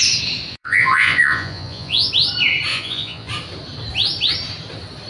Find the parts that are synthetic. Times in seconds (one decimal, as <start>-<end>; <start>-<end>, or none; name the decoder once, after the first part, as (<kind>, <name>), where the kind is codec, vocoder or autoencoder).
0.5-2.1 (vocoder, Vocos); 2.7-3.3